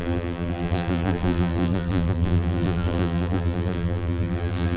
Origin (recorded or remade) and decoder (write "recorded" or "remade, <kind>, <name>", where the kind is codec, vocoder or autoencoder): remade, vocoder, BigVGAN v2